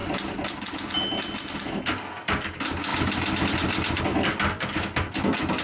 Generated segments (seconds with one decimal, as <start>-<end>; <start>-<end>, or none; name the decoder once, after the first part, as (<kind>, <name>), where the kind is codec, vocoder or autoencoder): none